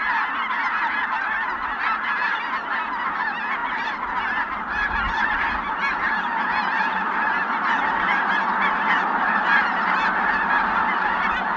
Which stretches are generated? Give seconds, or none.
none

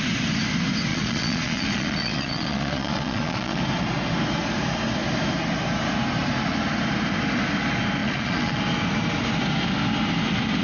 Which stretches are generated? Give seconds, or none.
0.9-3.6 (vocoder, Vocos); 8.0-8.6

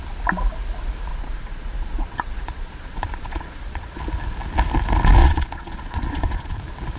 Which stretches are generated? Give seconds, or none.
1.1-4.0 (vocoder, Vocos); 5.2-6.6